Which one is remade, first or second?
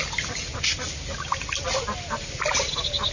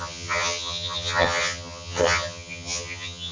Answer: second